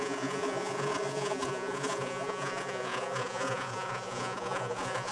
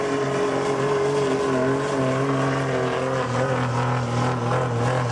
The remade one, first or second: first